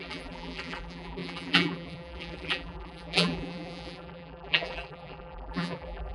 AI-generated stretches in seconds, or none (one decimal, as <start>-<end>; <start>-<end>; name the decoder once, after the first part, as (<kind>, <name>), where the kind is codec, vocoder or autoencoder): 0.0-6.1 (vocoder, BigVGAN v2)